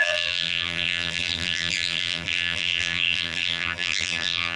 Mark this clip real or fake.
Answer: fake